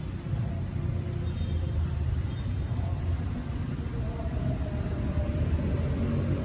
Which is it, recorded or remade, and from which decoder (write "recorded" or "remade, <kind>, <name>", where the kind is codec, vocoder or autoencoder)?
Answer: recorded